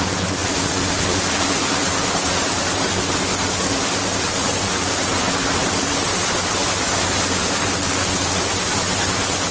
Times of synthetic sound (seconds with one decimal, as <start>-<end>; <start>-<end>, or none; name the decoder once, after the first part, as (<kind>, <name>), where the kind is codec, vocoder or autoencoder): none